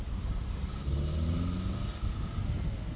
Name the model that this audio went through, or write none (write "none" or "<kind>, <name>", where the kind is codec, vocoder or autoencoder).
none